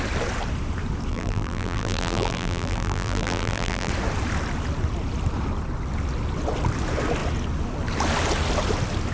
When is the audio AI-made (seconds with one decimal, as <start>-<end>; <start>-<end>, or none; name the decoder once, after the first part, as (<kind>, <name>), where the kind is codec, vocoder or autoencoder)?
1.1-3.9 (vocoder, BigVGAN v2)